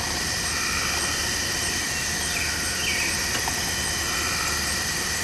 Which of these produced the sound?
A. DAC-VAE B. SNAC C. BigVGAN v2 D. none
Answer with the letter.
D